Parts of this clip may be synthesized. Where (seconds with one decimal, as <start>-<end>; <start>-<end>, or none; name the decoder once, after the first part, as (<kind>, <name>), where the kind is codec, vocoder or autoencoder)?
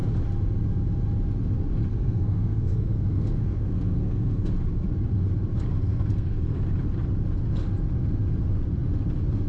1.9-4.5 (codec, SNAC); 5.7-6.6